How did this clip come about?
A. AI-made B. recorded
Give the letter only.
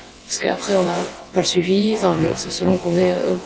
A